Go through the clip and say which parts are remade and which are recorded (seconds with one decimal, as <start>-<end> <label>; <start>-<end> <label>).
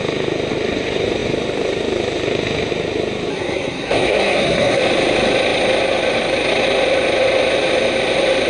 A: 0.0-3.3 recorded; 3.3-4.8 remade; 4.8-8.5 recorded